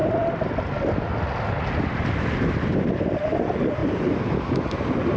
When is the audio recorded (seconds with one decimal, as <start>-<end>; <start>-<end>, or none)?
0.0-5.2